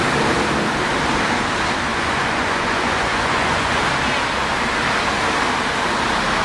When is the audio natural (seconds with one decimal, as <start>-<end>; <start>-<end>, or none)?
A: 0.0-1.9; 3.8-6.4